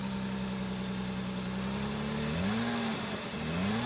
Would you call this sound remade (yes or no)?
no